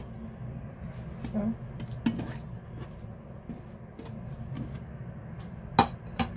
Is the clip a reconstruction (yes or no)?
no